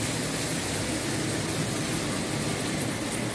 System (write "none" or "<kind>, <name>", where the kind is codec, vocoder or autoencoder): none